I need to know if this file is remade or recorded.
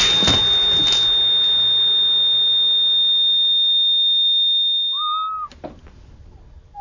recorded